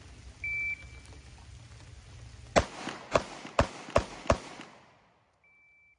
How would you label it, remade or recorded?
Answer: recorded